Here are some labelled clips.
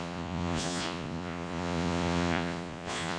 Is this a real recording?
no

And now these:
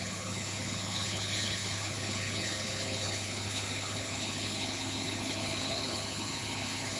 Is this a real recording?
no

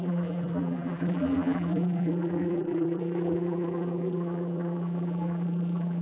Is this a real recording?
no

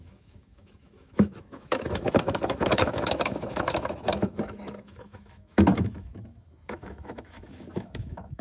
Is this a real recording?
no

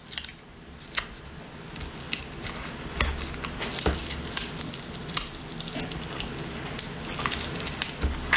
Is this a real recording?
yes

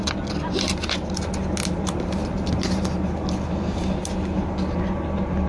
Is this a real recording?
yes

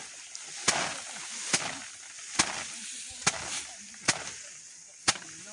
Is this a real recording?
yes